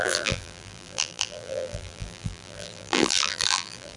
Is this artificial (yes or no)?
yes